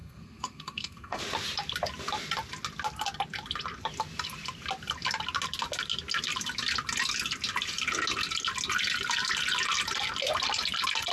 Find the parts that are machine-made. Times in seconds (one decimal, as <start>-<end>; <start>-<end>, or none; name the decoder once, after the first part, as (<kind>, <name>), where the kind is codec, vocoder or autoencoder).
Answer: 0.0-1.2 (codec, SNAC)